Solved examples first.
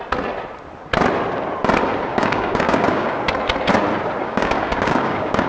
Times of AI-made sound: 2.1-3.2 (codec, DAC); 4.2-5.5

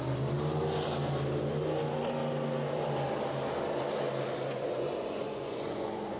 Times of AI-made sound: 4.5-6.2 (vocoder, Vocos)

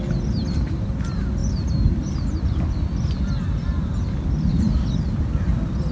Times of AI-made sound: none

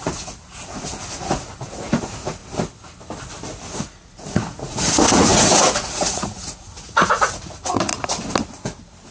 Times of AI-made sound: 0.0-2.4 (vocoder, Vocos); 3.8-7.9

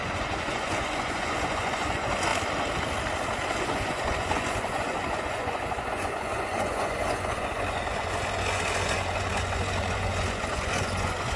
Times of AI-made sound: 0.0-2.3 (vocoder, Vocos); 3.6-11.4